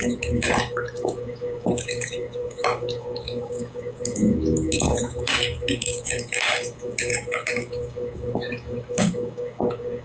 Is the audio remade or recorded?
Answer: remade